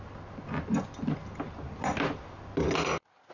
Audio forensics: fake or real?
real